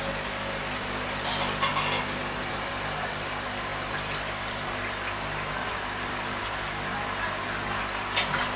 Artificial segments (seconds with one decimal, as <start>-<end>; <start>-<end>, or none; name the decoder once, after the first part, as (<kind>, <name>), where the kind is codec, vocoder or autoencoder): none

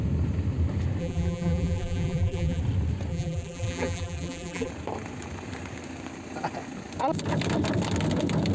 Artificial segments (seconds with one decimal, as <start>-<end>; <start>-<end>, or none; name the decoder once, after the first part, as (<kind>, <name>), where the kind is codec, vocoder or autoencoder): 1.0-2.6 (vocoder, BigVGAN v2); 3.1-4.7

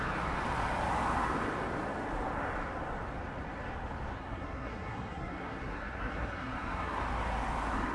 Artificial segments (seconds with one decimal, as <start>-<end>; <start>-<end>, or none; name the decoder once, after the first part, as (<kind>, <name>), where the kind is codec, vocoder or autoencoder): 4.2-7.0 (codec, SNAC)